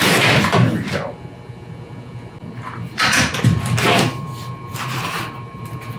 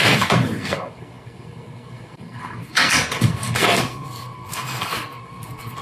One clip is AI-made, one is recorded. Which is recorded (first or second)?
first